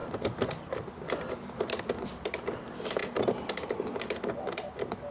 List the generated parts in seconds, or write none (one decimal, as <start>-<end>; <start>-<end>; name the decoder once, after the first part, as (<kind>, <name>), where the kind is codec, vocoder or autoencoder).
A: none